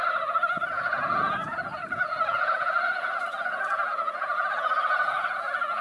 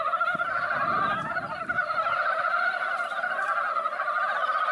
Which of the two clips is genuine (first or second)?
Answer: second